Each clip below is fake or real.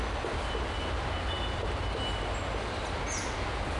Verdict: real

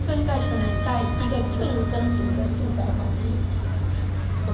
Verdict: real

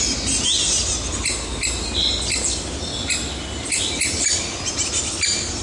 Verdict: real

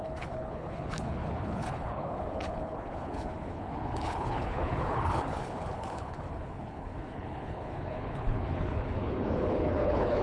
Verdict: fake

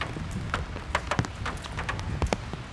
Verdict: real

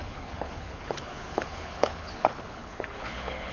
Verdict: fake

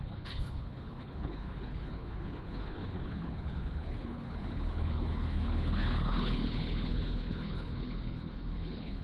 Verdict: fake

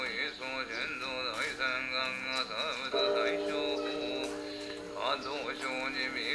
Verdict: real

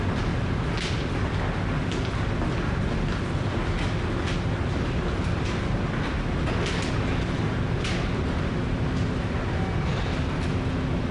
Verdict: real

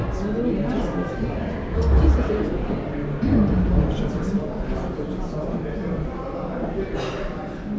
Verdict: real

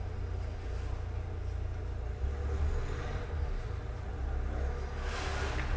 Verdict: real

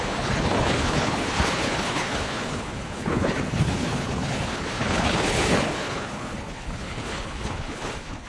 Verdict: fake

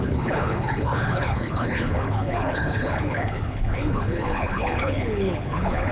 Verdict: fake